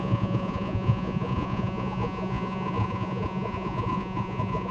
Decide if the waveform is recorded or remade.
remade